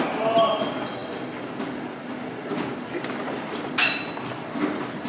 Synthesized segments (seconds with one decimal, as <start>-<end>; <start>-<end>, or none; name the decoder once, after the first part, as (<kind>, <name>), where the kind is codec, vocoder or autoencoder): none

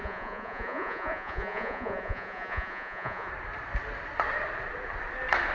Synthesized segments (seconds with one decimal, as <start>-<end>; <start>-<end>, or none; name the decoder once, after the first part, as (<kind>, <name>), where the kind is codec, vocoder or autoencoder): 0.0-3.3 (vocoder, Vocos)

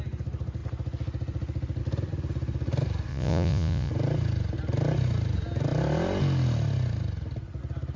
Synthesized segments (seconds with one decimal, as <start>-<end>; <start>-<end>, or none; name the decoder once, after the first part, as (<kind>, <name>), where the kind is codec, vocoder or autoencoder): 3.1-3.9 (vocoder, Vocos)

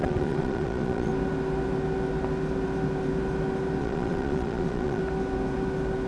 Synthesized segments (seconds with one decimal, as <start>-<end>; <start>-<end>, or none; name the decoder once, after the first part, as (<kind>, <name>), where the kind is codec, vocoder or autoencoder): 0.0-1.1 (vocoder, Vocos); 3.8-5.0

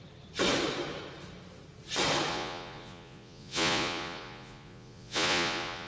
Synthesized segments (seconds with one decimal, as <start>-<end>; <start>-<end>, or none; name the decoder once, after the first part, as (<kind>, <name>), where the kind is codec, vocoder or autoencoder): 2.3-5.9 (vocoder, Vocos)